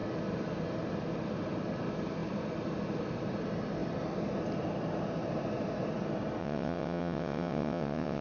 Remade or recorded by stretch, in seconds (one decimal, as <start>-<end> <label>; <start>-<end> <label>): 0.0-6.4 recorded; 6.4-8.2 remade